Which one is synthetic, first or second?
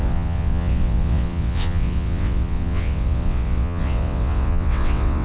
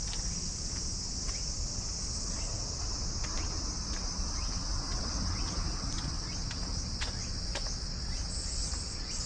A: first